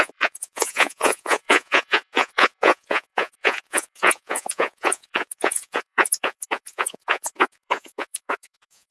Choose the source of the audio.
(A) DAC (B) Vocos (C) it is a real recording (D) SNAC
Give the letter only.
B